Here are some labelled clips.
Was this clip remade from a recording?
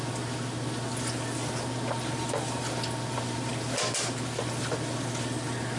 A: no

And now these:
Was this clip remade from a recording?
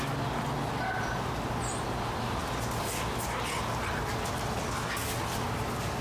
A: no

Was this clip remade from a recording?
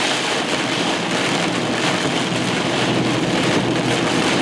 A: no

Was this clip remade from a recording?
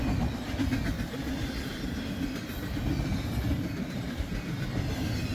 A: no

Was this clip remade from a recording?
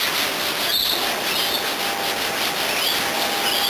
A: no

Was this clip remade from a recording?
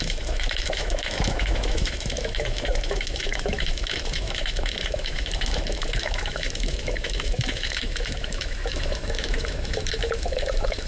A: yes